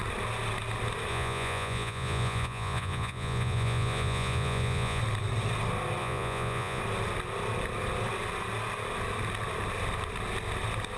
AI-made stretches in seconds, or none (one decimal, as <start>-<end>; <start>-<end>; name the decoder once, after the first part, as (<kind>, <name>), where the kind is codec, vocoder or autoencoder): 1.1-5.0 (vocoder, Vocos); 6.0-6.8